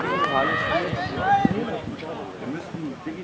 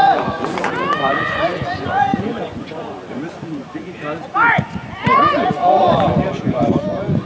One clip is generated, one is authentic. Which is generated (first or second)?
second